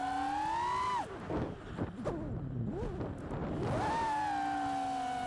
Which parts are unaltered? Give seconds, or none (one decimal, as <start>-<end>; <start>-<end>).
0.0-5.3